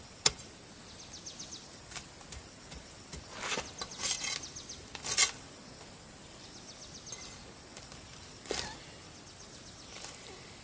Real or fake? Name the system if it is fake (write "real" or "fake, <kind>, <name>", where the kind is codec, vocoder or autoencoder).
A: real